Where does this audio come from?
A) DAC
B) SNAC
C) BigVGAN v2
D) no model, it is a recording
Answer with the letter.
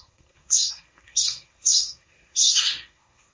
B